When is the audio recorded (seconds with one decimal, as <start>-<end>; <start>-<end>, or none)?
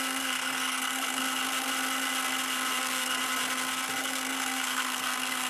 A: 1.2-2.8; 3.2-4.0